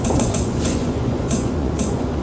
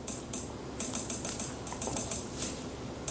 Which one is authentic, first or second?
second